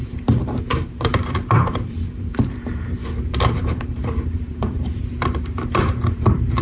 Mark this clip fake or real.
fake